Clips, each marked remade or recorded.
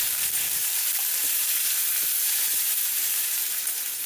remade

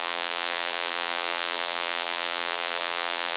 remade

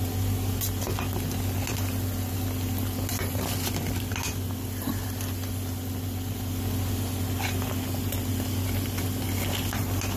recorded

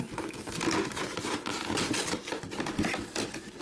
recorded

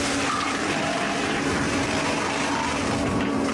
recorded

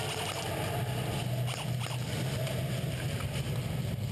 recorded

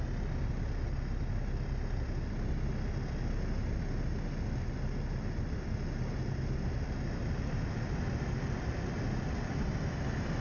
recorded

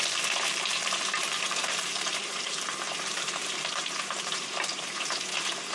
remade